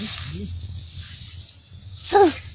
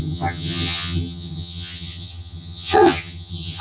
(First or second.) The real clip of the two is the first